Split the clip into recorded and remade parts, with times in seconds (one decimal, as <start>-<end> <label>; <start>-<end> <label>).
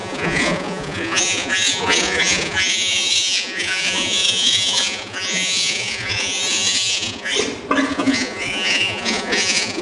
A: 0.0-7.3 remade; 7.3-7.9 recorded; 7.9-9.8 remade